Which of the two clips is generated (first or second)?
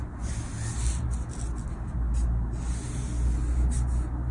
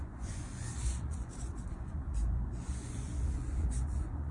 second